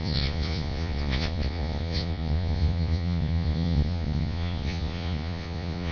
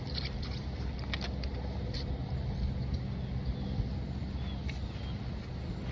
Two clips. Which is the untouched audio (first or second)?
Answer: second